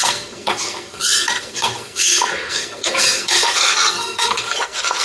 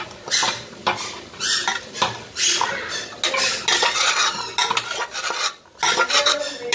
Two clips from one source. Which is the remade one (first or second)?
first